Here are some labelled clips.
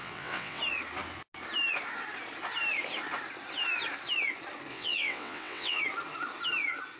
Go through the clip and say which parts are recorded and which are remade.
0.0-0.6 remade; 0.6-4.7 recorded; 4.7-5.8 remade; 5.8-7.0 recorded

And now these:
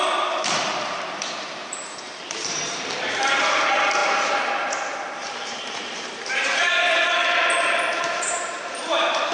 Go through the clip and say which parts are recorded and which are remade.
0.0-9.3 remade

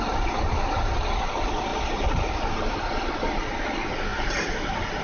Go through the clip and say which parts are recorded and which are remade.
0.0-1.7 recorded; 1.7-2.6 remade; 2.6-4.1 recorded; 4.1-5.0 remade

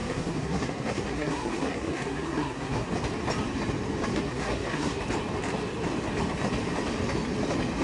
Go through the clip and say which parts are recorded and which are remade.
0.0-2.9 remade; 2.9-4.1 recorded; 4.1-5.0 remade; 5.0-7.8 recorded

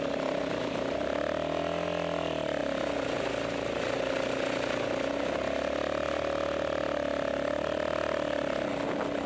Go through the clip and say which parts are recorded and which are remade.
0.0-9.3 recorded